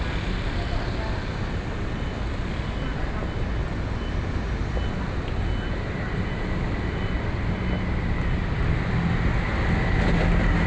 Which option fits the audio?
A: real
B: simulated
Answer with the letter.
A